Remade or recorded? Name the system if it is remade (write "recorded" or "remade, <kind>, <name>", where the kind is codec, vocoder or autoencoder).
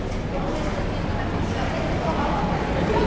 recorded